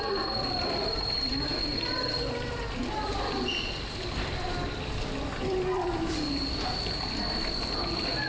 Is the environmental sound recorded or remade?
remade